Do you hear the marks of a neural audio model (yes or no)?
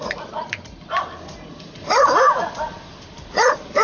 yes